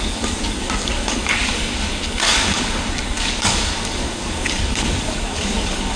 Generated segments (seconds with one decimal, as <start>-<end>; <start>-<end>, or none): 0.0-6.0